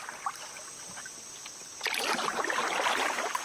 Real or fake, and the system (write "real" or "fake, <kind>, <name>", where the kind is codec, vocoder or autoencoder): real